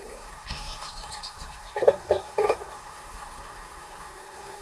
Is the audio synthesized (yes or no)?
yes